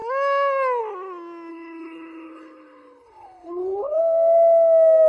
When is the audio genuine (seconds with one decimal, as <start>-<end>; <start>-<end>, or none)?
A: 0.0-1.5; 4.0-5.1